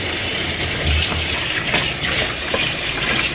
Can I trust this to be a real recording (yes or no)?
no